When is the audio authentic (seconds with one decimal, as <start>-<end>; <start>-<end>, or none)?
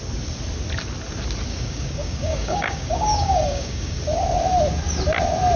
0.0-1.5; 4.0-5.6